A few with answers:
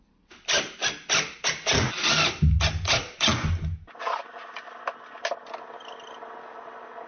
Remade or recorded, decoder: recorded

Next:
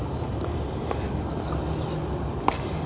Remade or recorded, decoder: recorded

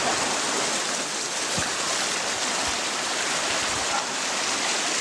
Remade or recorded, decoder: recorded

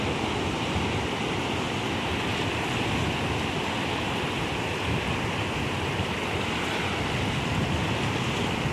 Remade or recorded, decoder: recorded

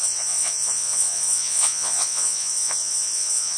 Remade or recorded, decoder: remade, vocoder, Vocos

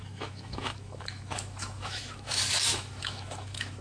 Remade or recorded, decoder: remade, autoencoder, DAC-VAE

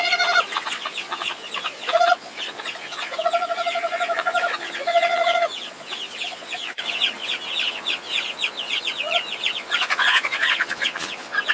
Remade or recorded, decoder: remade, vocoder, Vocos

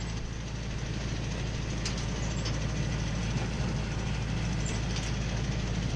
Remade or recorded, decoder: recorded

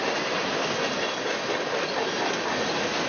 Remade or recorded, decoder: recorded